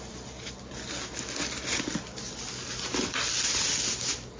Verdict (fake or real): real